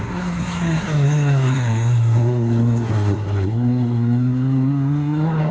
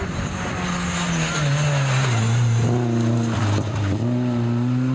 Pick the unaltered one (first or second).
second